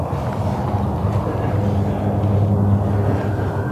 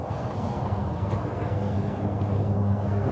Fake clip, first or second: second